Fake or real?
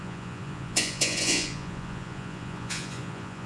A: fake